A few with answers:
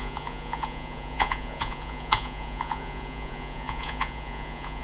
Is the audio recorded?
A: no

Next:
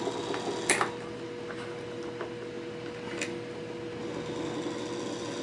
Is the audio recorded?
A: yes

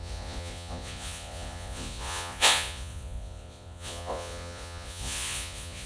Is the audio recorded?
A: no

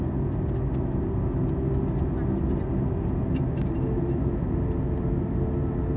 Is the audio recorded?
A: yes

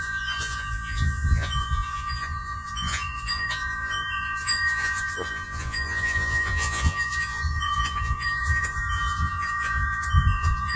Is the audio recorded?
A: no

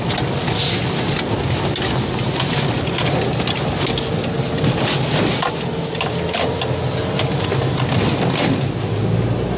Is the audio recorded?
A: yes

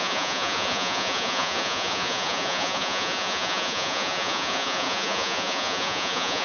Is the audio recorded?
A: no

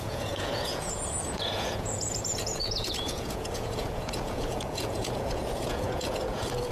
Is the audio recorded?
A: no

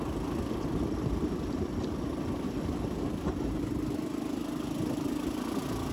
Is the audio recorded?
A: yes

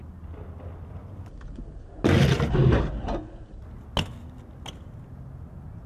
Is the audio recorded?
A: yes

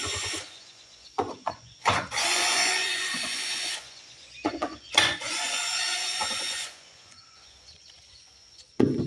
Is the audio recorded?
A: no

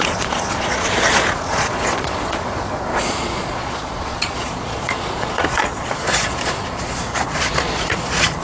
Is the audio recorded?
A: no